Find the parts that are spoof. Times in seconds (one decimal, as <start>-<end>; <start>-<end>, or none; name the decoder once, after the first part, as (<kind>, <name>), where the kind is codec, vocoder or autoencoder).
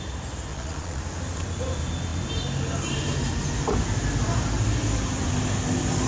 0.5-1.0 (vocoder, Vocos)